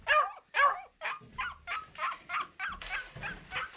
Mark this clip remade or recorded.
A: recorded